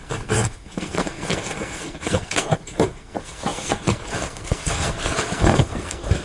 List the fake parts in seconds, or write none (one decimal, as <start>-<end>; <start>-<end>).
0.0-6.2

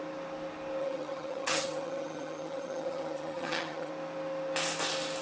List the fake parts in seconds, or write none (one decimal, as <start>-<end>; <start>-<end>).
0.8-3.9

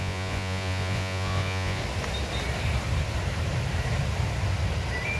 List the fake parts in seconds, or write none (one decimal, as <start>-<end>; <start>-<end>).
0.0-1.8

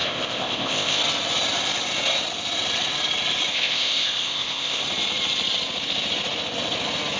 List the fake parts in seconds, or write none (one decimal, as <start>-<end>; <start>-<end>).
0.0-1.0; 3.5-4.8

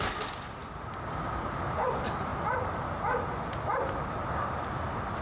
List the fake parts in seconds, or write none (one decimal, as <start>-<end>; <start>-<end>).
none

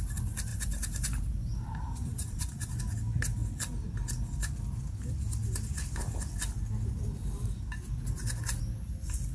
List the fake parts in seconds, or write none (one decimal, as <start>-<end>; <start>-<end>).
0.5-2.8

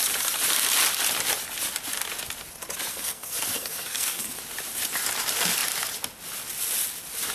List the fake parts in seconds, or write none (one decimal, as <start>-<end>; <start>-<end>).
2.9-4.4